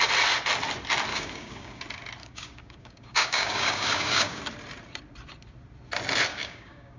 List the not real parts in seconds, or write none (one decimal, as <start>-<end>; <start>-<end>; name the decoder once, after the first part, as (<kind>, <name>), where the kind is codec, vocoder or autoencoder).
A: 1.1-1.8 (codec, DAC); 2.2-4.4; 6.3-7.0